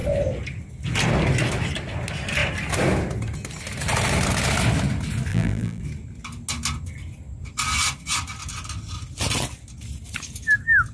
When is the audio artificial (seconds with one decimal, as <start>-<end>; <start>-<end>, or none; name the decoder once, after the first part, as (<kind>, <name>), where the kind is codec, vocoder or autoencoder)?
5.3-5.8 (vocoder, BigVGAN v2)